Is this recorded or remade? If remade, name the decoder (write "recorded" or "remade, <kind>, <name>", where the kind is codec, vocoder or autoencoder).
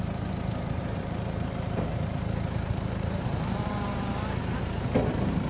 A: remade, vocoder, BigVGAN v2